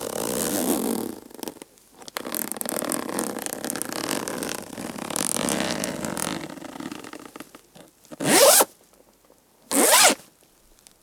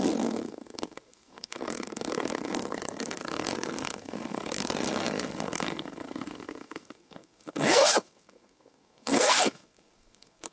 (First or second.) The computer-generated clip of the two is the second